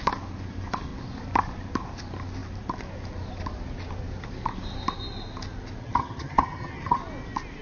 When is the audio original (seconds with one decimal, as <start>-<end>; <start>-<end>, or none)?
0.0-5.8; 7.0-7.6